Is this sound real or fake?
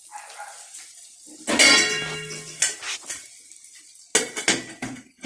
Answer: real